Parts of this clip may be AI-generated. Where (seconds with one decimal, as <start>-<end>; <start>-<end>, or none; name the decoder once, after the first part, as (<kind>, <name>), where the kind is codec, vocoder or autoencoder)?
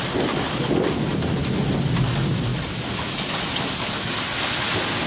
none